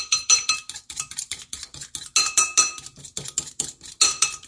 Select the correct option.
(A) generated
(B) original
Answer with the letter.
B